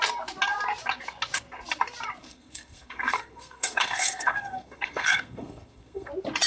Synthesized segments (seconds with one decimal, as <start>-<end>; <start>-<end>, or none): 2.2-6.1